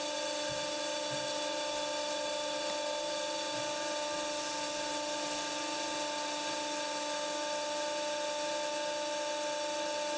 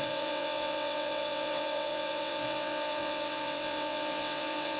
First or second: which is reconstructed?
second